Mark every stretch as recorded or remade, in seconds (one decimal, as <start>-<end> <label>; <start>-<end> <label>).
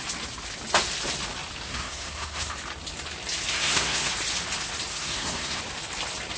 0.0-1.7 recorded; 1.7-2.5 remade; 2.5-3.5 recorded; 3.5-4.1 remade; 4.1-4.9 recorded; 4.9-5.6 remade; 5.6-6.4 recorded